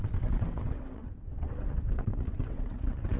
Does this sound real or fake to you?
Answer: fake